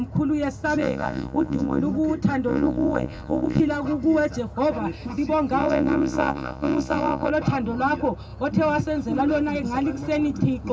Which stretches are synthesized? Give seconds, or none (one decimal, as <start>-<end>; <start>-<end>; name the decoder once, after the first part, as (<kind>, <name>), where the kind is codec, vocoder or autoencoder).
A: 0.8-1.8 (vocoder, Vocos); 2.5-3.6; 5.6-7.3